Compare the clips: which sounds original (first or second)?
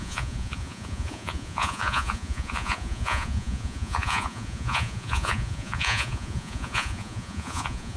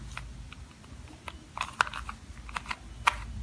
second